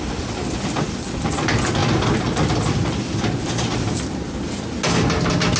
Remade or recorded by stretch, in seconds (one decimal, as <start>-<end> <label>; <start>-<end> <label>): 0.0-5.6 recorded